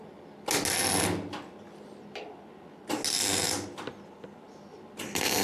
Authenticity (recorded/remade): recorded